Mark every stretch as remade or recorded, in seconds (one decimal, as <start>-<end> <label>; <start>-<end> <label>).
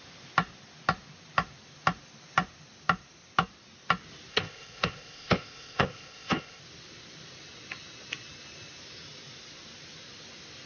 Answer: 0.0-4.3 recorded; 4.3-6.6 remade; 6.6-10.7 recorded